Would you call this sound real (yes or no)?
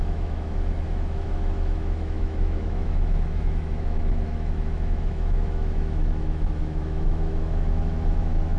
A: no